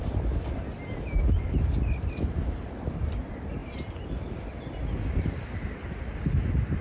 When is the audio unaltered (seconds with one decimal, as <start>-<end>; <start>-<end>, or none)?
0.0-3.6; 4.2-6.8